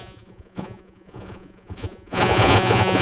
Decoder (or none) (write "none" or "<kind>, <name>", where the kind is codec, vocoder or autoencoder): vocoder, Vocos